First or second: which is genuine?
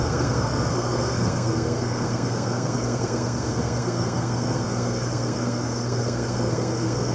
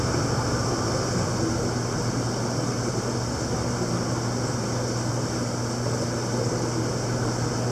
second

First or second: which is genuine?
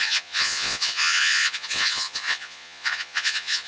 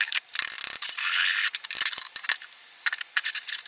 second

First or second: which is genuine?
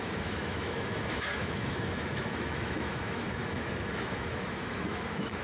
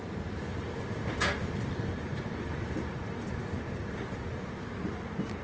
second